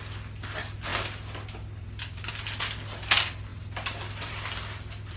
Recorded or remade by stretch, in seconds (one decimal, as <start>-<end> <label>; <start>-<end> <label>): 0.0-5.2 recorded